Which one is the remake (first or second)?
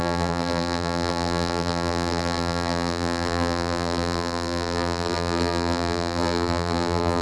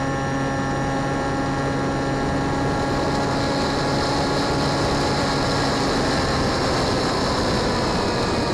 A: first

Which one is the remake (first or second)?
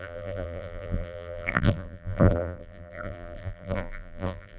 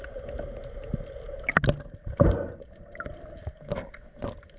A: first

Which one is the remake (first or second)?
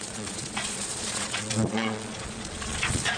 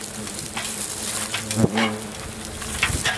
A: first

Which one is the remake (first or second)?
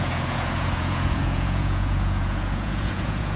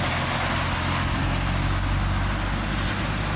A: first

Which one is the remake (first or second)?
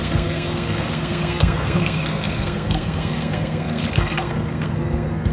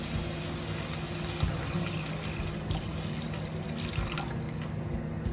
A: first